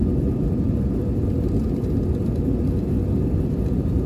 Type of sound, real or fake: real